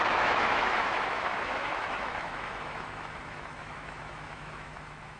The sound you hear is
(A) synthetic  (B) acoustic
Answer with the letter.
A